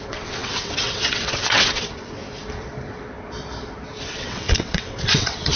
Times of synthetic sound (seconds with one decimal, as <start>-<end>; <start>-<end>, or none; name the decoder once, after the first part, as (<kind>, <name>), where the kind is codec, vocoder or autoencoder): 0.0-2.2 (vocoder, WaveNeXt); 4.1-5.6